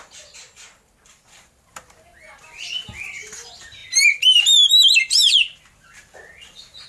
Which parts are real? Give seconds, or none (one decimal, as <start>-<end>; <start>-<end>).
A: 0.0-6.9